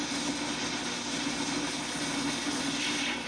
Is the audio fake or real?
real